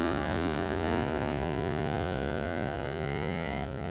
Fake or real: fake